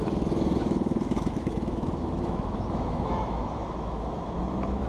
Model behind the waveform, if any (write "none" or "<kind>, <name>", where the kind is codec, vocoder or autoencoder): autoencoder, DAC-VAE